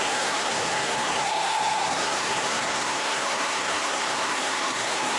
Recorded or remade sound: remade